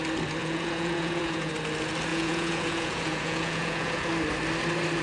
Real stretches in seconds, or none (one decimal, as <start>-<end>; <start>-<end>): 0.0-0.4; 1.5-2.1; 4.1-5.0